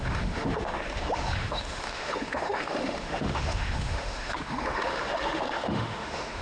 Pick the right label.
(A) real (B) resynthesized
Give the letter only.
B